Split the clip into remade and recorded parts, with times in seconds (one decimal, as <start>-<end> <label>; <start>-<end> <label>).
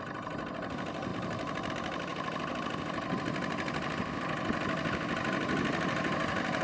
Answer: 0.0-1.1 recorded; 1.1-1.7 remade; 1.7-2.1 recorded; 2.1-2.6 remade; 2.6-6.6 recorded